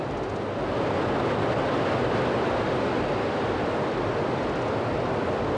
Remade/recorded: recorded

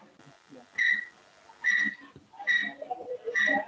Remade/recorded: recorded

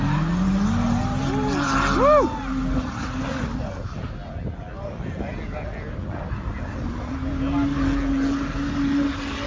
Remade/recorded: recorded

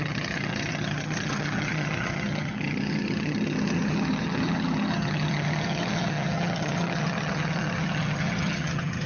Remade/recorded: remade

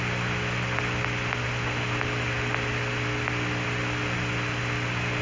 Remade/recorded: recorded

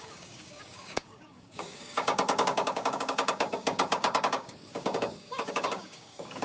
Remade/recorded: remade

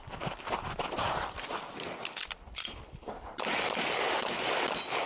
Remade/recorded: recorded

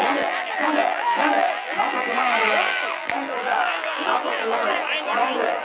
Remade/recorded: remade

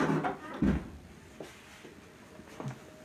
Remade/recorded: recorded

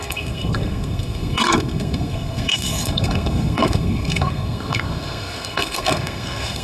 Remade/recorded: remade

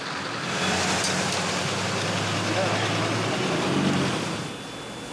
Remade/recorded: recorded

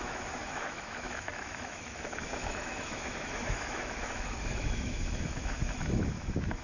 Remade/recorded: remade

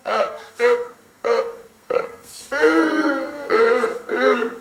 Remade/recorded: remade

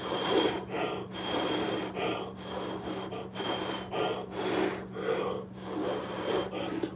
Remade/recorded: recorded